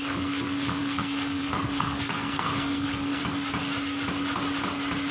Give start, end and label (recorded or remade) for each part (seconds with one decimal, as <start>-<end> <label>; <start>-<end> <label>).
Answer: 0.0-3.2 remade; 3.2-5.1 recorded